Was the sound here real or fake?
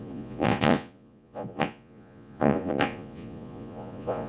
fake